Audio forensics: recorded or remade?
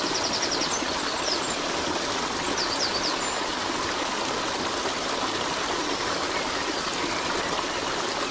recorded